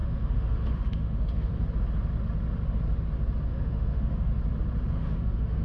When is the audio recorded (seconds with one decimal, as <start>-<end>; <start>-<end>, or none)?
1.5-3.5; 4.3-4.9